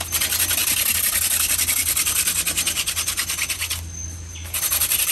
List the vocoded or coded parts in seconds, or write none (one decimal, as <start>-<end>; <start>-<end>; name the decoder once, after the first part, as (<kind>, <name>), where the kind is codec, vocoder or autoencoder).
none